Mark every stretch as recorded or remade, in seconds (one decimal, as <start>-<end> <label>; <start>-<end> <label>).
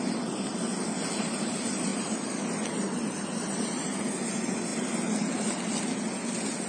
0.0-1.9 recorded; 1.9-2.9 remade; 2.9-6.7 recorded